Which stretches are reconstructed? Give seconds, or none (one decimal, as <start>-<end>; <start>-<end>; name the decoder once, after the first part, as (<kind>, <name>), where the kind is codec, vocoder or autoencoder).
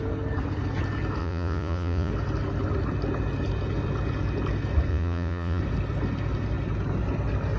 1.2-2.1 (vocoder, Vocos); 4.9-5.6